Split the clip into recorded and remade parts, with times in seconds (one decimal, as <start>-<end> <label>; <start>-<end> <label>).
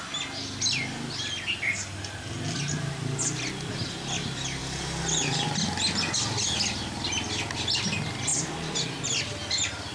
0.0-9.9 recorded